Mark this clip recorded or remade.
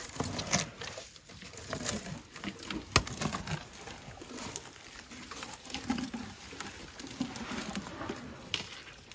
recorded